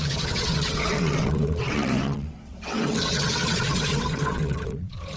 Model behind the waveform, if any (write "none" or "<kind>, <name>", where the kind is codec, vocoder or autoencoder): vocoder, WaveNeXt